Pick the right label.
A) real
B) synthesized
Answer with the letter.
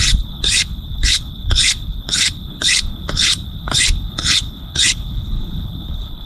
B